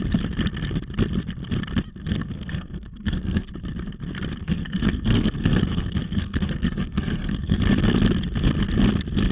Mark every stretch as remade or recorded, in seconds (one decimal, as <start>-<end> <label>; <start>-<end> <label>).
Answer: 0.0-2.0 recorded; 2.0-3.5 remade; 3.5-4.4 recorded; 4.4-7.6 remade; 7.6-9.3 recorded